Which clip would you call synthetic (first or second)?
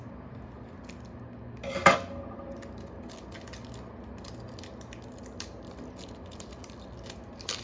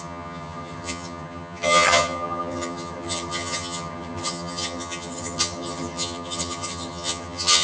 second